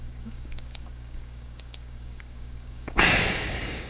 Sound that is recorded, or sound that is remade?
remade